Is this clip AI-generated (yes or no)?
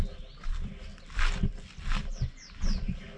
no